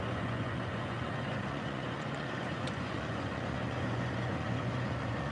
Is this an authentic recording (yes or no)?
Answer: no